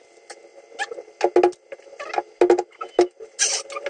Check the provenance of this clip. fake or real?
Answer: real